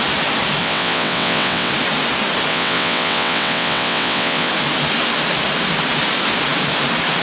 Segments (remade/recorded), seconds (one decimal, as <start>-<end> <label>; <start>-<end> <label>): 0.0-0.6 recorded; 0.6-1.7 remade; 1.7-2.5 recorded; 2.5-4.5 remade; 4.5-7.2 recorded